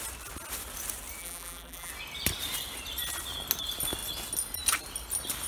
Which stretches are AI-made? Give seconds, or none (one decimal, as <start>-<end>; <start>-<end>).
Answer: 1.2-1.9